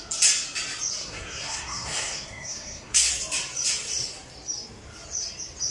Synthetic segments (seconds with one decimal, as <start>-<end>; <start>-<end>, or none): 1.0-3.1